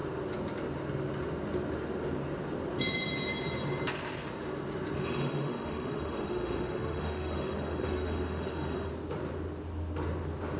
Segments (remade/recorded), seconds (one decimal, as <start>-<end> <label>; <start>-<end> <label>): 0.0-5.0 recorded; 5.0-8.9 remade; 8.9-10.6 recorded